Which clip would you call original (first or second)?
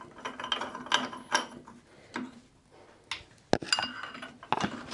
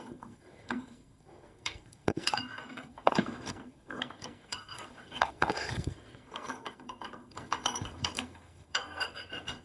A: first